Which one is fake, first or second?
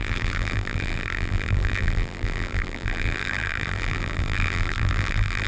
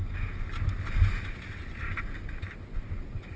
first